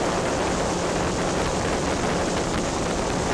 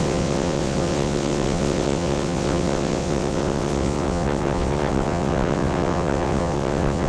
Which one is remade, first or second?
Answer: second